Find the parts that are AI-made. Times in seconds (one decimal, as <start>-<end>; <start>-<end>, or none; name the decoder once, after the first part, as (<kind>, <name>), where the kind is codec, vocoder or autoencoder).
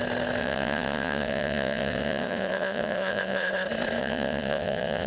0.4-3.5 (vocoder, WaveNeXt); 4.0-5.1